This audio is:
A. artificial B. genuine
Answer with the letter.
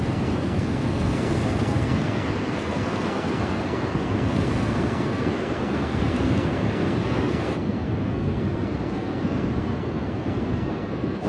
A